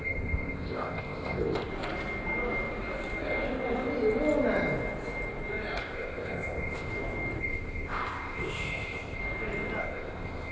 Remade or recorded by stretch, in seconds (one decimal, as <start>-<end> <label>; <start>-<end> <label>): 0.0-1.7 remade; 1.7-5.8 recorded; 5.8-6.9 remade; 6.9-7.4 recorded; 7.4-9.2 remade; 9.2-9.8 recorded; 9.8-10.5 remade